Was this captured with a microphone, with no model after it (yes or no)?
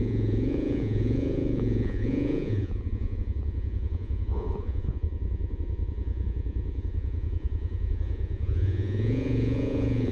no